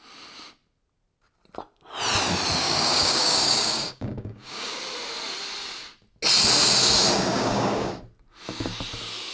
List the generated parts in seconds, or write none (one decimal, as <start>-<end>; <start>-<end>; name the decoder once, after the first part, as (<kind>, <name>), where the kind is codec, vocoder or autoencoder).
2.6-4.8 (codec, DAC); 7.3-7.9